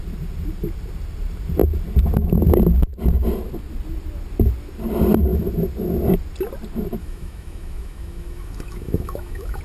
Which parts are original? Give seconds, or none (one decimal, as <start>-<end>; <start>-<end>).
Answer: 0.0-7.0